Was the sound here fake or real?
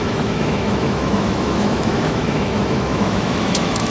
fake